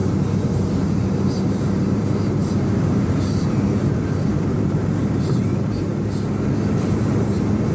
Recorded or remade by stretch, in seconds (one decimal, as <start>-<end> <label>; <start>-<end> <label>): 0.0-5.9 remade; 5.9-6.8 recorded; 6.8-7.7 remade